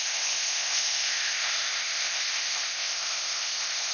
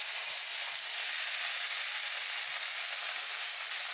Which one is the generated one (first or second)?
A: first